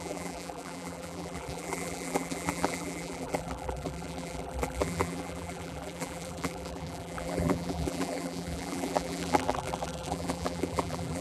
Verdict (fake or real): fake